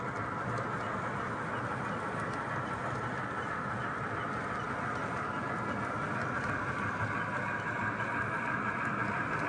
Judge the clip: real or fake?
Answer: real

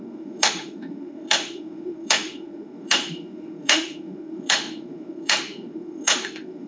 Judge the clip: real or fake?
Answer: fake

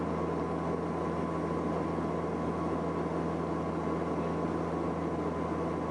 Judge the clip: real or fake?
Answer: real